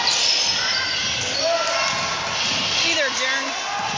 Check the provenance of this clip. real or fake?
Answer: real